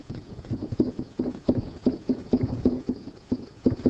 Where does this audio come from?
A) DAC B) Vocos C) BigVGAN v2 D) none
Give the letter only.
B